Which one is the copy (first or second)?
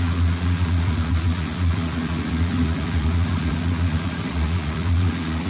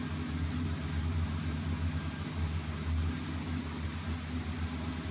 first